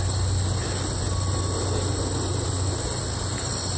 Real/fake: real